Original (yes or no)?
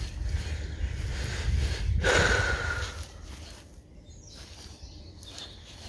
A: yes